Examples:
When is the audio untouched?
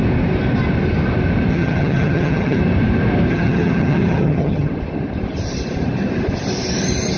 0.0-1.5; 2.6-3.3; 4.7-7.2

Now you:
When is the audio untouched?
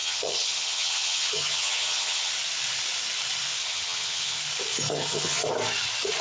2.3-3.6; 4.4-4.9; 5.4-6.2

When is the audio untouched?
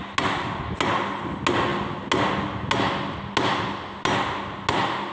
0.0-5.1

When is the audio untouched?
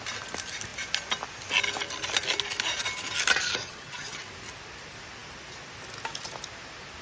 0.0-3.6; 4.2-7.0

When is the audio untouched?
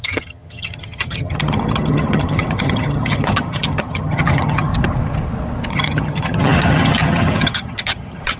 4.7-5.7